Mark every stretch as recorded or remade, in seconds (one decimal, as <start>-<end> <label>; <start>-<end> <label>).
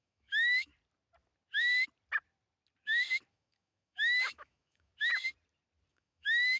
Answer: 0.0-0.7 remade; 0.7-3.3 recorded; 3.3-4.9 remade; 4.9-5.9 recorded; 5.9-6.6 remade